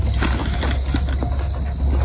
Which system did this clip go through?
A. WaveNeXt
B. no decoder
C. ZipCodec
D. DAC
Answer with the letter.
B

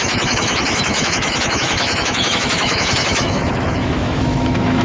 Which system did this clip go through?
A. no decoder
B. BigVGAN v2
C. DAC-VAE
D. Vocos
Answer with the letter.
C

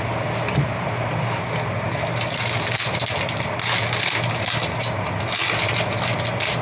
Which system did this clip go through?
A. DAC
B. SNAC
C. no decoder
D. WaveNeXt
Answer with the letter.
C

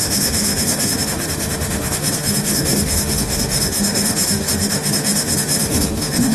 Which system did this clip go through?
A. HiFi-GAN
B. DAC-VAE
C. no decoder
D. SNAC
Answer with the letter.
B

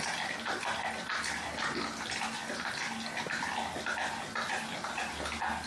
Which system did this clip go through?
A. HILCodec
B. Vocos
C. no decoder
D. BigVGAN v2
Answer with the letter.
C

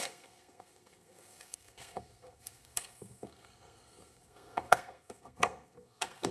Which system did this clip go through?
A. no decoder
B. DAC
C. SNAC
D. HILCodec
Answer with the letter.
C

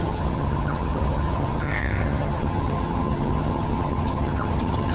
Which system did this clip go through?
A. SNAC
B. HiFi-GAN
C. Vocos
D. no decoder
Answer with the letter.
B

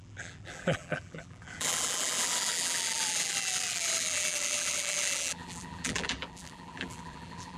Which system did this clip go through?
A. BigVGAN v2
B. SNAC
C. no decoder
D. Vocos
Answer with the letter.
A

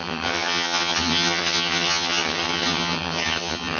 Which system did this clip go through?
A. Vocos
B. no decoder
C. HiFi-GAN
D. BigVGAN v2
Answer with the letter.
C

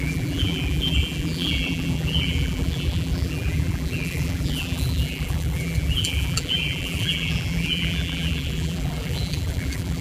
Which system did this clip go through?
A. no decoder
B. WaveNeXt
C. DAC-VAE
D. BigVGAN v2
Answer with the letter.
D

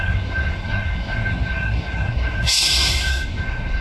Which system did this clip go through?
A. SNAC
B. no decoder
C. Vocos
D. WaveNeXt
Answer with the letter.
A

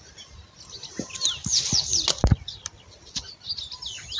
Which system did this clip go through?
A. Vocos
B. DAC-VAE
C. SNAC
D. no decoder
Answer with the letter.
D